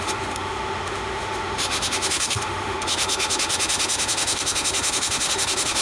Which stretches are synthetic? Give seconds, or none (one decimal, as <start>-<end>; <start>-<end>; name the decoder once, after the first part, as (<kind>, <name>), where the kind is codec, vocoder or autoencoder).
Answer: 0.0-5.8 (autoencoder, DAC-VAE)

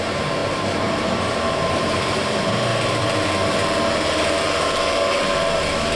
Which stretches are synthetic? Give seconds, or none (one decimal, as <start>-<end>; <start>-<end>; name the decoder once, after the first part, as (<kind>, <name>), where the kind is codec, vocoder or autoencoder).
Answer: 0.0-2.7 (vocoder, BigVGAN v2); 5.6-6.0

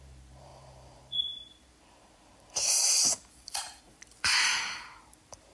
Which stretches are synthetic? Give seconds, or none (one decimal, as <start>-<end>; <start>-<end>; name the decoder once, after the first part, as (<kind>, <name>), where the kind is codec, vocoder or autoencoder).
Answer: 0.0-5.5 (vocoder, BigVGAN v2)

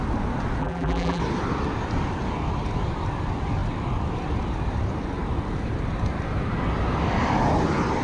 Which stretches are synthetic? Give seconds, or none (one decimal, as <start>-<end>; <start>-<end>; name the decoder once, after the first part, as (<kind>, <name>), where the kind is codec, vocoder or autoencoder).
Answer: 0.6-1.2 (vocoder, BigVGAN v2)

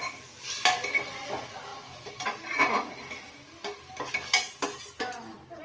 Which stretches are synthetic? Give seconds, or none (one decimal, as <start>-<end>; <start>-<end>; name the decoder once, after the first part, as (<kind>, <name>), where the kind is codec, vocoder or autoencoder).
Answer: none

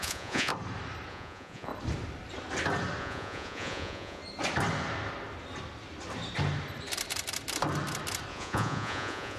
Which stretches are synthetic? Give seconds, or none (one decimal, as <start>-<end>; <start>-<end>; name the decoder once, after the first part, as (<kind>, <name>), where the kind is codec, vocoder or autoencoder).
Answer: 0.0-0.5 (vocoder, Vocos); 1.1-1.7; 3.0-4.2; 8.3-9.4

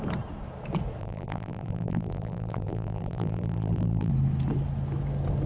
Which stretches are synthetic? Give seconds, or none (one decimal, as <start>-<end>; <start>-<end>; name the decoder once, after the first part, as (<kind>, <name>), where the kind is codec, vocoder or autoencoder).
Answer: 1.0-4.1 (vocoder, BigVGAN v2)

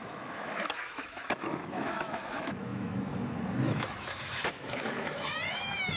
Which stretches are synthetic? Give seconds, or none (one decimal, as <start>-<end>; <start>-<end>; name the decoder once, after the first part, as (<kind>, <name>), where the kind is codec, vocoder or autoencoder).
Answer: 0.0-6.0 (autoencoder, DAC-VAE)